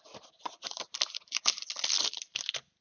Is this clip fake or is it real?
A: real